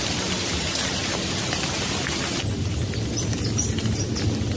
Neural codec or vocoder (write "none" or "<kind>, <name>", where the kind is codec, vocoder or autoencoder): none